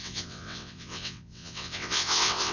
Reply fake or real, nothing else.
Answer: fake